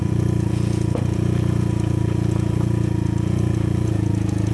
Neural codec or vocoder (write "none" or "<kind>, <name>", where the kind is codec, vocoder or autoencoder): vocoder, Vocos